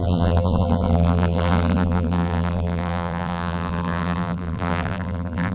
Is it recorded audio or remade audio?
remade